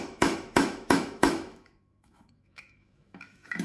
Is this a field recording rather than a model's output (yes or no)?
no